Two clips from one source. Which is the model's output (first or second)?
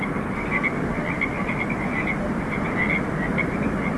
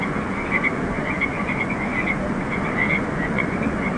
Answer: second